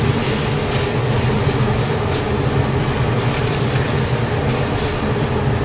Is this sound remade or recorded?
recorded